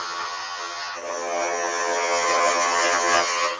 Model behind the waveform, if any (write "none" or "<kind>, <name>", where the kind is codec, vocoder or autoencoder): vocoder, HiFi-GAN